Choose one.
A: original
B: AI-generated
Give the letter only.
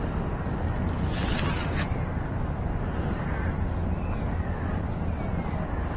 A